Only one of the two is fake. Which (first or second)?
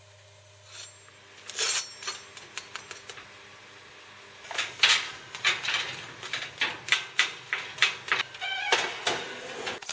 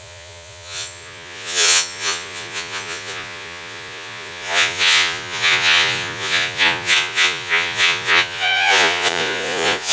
second